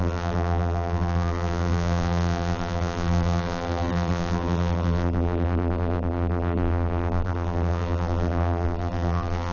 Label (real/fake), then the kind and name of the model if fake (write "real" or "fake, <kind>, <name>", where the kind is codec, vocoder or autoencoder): fake, vocoder, BigVGAN v2